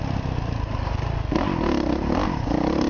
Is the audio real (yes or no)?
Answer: yes